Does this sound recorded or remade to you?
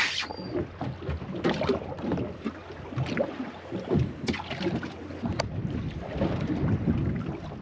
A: recorded